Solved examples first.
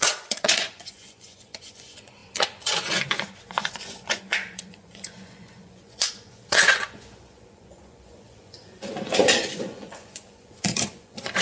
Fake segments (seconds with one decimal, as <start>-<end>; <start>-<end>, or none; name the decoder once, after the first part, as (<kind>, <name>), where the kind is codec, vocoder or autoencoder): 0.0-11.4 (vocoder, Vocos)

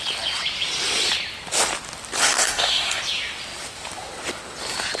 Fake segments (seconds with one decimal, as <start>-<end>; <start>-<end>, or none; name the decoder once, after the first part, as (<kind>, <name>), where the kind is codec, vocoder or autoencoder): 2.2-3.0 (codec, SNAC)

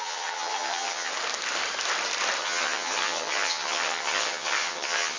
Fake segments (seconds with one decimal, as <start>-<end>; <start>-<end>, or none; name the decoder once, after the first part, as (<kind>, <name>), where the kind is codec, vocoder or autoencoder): 0.0-1.1 (vocoder, HiFi-GAN); 2.4-5.2

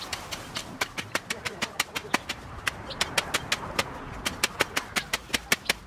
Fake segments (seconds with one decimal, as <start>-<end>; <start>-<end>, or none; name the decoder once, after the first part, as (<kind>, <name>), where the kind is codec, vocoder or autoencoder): none

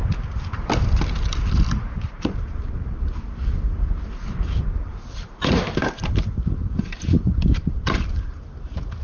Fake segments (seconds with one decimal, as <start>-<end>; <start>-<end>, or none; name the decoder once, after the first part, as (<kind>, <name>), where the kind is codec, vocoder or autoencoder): 2.1-9.0 (vocoder, BigVGAN v2)

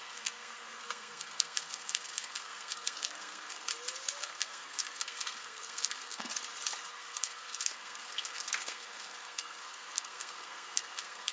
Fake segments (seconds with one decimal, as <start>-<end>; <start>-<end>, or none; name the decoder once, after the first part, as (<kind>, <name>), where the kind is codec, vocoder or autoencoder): 0.0-3.7 (codec, SNAC); 4.2-6.3; 6.9-11.3